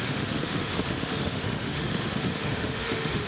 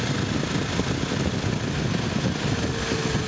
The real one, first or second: second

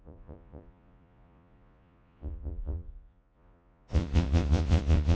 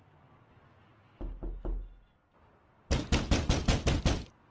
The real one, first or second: second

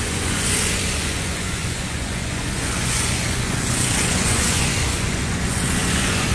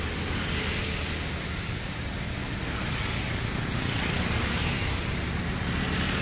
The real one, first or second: second